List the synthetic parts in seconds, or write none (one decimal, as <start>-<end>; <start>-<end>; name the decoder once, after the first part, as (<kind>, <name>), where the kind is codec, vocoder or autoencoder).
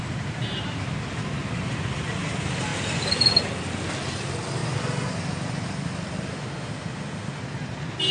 6.3-7.4 (autoencoder, DAC-VAE)